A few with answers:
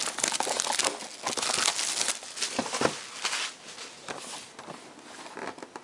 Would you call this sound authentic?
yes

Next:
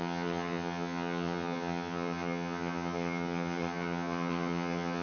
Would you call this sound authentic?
no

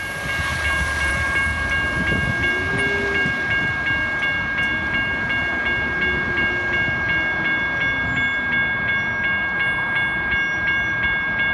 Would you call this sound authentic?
yes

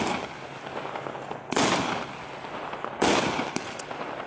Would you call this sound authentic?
yes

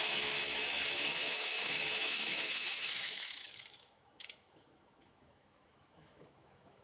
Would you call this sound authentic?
no